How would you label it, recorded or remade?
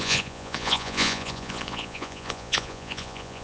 remade